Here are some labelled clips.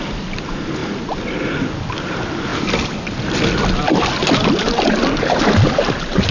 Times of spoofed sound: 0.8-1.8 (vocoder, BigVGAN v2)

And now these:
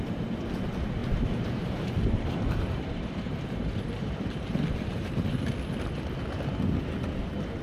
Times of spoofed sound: 1.0-5.5 (vocoder, BigVGAN v2)

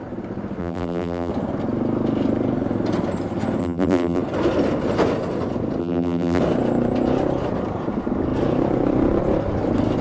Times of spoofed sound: 0.6-1.3 (vocoder, BigVGAN v2); 3.6-4.2; 5.8-6.4

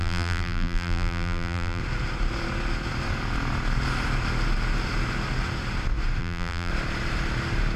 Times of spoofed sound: 0.0-1.8 (vocoder, BigVGAN v2); 6.2-6.7

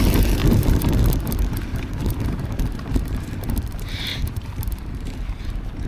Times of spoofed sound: 0.4-1.0 (vocoder, BigVGAN v2); 4.1-5.4

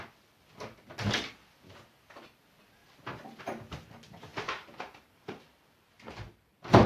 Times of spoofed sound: 4.3-5.9 (vocoder, BigVGAN v2)

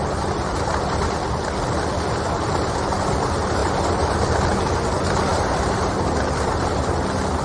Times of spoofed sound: 3.6-4.2 (vocoder, BigVGAN v2); 5.3-5.9

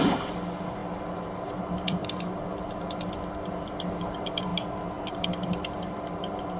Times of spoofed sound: 0.0-4.5 (vocoder, BigVGAN v2); 5.1-6.6